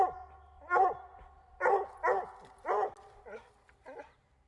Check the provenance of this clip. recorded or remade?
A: recorded